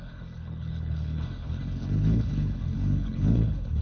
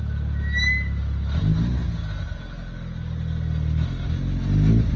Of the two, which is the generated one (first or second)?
first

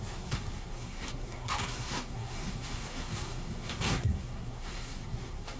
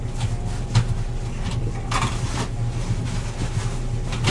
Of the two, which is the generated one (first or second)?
first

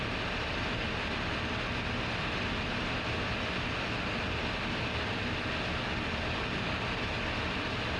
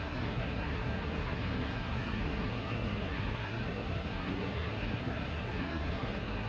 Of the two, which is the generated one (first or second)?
second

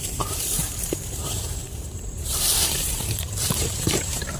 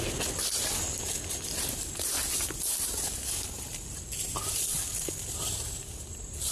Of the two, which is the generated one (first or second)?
first